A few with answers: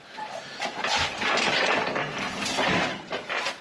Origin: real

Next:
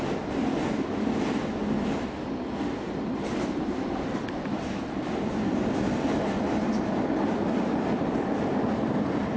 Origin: real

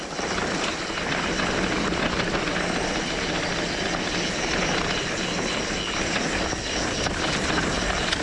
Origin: real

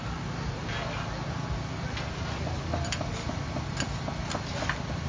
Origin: real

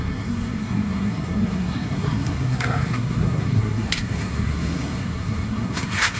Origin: fake